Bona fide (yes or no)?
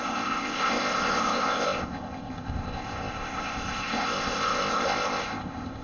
no